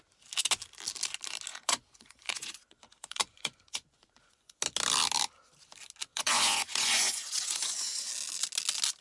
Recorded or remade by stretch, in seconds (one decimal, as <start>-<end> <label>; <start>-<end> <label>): 0.0-1.5 recorded; 1.5-4.6 remade; 4.6-6.1 recorded; 6.1-8.1 remade; 8.1-9.0 recorded